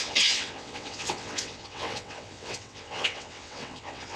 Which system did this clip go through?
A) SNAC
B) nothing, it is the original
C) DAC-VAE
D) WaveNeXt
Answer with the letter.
D